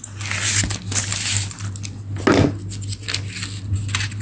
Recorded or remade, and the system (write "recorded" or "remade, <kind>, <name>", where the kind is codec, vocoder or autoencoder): recorded